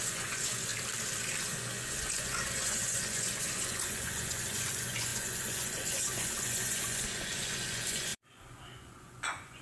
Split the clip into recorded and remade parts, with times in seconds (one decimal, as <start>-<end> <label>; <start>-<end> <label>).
0.0-0.7 remade; 0.7-1.4 recorded; 1.4-9.6 remade